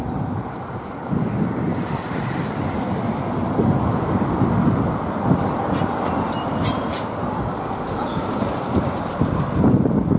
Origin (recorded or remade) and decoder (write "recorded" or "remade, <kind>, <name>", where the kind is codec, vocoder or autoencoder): remade, vocoder, BigVGAN v2